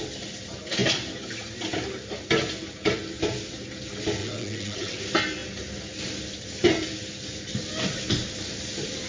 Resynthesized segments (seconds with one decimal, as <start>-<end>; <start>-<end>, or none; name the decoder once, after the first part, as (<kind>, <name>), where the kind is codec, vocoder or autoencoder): 4.2-5.0 (vocoder, WaveNeXt)